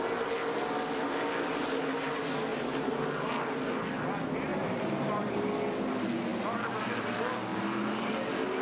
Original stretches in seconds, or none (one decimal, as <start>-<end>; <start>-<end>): 0.0-2.5; 3.3-4.5; 5.5-7.5; 8.1-8.6

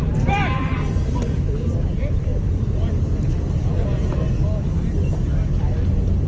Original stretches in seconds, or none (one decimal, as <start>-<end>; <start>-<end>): 2.3-6.3

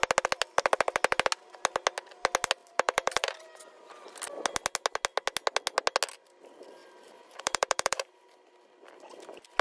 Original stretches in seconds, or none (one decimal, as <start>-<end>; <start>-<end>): 0.0-2.6; 3.9-6.8; 8.5-9.6

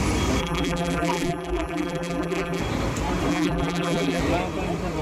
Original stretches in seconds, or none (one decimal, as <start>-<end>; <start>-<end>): 0.0-0.4; 2.6-3.3; 4.2-5.0

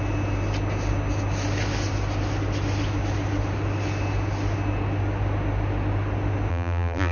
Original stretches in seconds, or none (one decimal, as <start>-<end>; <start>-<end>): 0.0-6.5

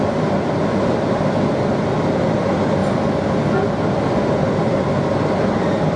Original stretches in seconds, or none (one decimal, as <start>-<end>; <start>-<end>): none

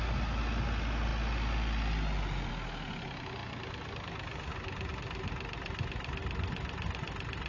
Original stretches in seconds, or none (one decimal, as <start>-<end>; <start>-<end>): 0.0-3.4; 4.9-6.2